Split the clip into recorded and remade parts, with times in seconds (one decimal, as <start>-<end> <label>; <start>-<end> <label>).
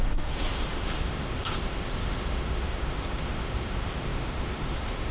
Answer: 0.0-5.1 remade